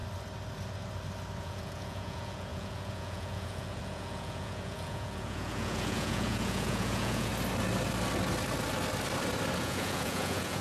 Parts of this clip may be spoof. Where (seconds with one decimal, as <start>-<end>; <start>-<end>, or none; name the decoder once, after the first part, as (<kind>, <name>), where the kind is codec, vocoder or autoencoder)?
1.4-7.3 (vocoder, Vocos); 9.6-10.6